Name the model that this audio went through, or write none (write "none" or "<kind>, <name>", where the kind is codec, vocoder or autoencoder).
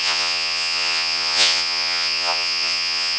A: vocoder, Vocos